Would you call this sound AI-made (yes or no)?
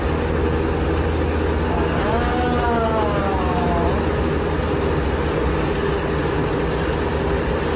no